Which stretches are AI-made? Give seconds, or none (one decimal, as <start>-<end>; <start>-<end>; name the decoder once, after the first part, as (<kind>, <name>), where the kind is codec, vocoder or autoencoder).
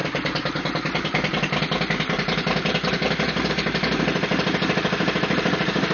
0.0-4.3 (vocoder, BigVGAN v2); 5.3-5.9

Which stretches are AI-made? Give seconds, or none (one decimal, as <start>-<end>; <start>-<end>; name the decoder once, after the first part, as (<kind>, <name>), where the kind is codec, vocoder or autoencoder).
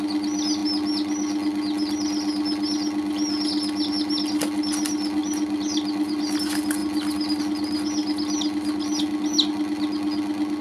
5.2-6.2 (vocoder, BigVGAN v2); 6.8-7.4; 8.0-9.0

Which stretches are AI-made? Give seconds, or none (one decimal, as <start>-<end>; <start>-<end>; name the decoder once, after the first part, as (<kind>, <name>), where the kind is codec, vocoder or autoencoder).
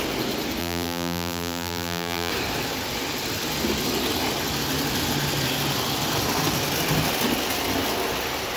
0.6-2.3 (vocoder, BigVGAN v2)